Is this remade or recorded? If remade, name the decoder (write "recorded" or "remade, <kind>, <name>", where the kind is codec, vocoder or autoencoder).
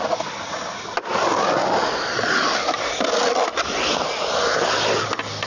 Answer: recorded